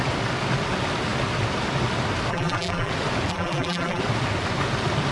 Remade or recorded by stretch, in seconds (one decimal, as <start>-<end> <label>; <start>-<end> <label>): 0.0-2.3 recorded; 2.3-2.9 remade; 2.9-3.3 recorded; 3.3-4.0 remade; 4.0-5.1 recorded